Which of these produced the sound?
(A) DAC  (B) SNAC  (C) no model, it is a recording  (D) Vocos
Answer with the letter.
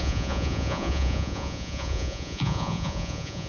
D